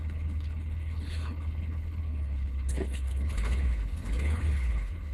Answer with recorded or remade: remade